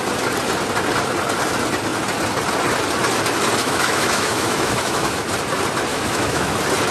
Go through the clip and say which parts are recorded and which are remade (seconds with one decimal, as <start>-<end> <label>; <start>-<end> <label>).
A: 0.0-3.6 recorded; 3.6-5.2 remade; 5.2-5.9 recorded; 5.9-6.5 remade; 6.5-6.9 recorded